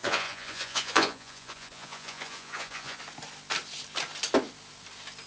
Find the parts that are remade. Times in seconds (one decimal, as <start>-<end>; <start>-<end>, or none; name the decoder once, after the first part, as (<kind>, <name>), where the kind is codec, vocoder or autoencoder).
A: 0.0-3.0 (vocoder, Vocos)

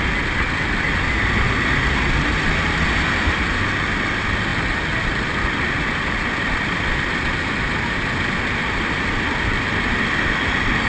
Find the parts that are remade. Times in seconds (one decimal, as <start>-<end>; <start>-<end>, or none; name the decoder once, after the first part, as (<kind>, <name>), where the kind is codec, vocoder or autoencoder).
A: none